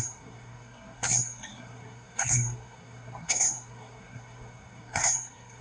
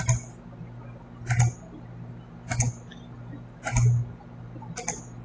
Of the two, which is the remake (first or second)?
first